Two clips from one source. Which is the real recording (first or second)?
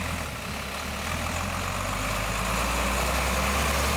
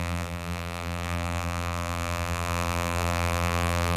first